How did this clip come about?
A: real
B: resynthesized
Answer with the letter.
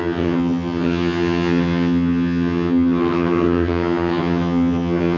B